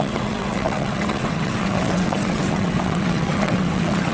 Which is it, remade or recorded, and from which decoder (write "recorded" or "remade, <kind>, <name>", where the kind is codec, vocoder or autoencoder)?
remade, vocoder, WaveNeXt